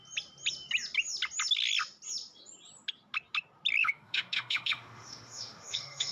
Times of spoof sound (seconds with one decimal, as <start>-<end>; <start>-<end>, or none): 3.8-6.1